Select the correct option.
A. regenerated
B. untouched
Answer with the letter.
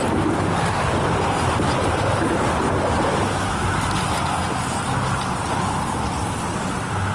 B